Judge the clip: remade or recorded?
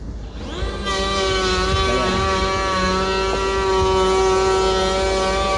recorded